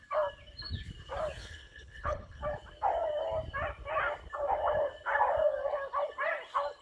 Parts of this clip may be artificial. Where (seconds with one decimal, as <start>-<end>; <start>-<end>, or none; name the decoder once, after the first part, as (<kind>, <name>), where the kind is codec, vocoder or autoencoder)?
1.4-2.4 (codec, HILCodec)